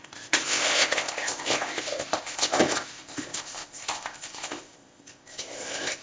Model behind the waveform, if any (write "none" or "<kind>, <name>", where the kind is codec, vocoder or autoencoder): codec, ZipCodec